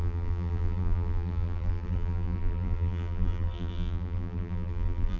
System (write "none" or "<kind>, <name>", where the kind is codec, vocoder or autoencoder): vocoder, BigVGAN v2